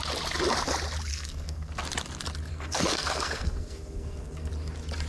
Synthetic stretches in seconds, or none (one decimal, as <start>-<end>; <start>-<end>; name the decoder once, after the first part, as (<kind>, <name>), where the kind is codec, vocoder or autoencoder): 1.1-1.7 (codec, SNAC); 2.5-4.5

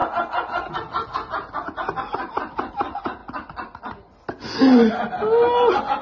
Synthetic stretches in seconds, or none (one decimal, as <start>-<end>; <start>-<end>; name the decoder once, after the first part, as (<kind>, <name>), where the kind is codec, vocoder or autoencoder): none

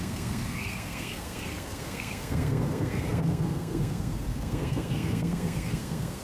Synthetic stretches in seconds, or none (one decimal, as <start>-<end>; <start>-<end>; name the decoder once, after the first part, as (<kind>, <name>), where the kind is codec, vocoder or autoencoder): 0.0-6.2 (codec, SNAC)

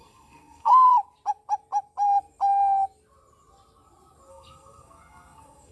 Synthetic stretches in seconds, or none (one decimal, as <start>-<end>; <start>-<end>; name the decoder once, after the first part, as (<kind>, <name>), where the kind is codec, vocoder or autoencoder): 0.0-0.9 (codec, SNAC); 4.3-5.7

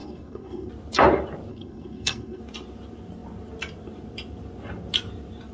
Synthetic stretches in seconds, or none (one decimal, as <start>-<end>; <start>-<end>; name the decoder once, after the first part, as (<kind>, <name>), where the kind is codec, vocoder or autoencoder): 0.0-0.7 (codec, SNAC); 1.5-2.4

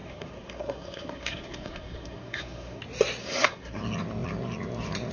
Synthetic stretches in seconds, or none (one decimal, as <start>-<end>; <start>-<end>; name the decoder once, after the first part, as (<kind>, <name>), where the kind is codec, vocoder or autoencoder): 0.0-2.8 (codec, SNAC); 3.2-3.8